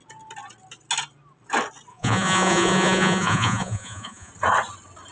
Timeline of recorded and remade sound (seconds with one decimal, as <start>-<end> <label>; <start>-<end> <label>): 0.0-1.9 recorded; 1.9-4.3 remade; 4.3-5.1 recorded